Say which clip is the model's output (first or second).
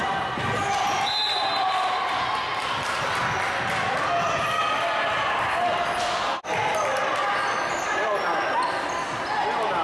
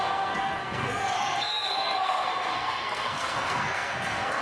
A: second